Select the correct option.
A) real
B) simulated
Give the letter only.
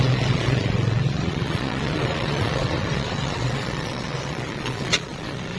B